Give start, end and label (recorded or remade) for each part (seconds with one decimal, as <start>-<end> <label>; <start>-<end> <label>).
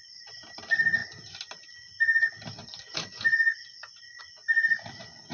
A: 0.0-5.3 recorded